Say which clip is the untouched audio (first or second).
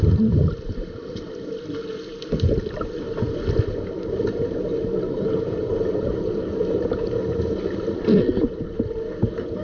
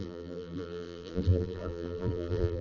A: first